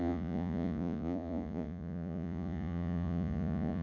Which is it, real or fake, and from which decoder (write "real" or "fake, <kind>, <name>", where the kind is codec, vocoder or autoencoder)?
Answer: fake, vocoder, Vocos